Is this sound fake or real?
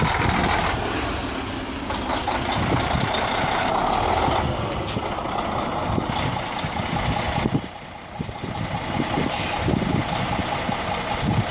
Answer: real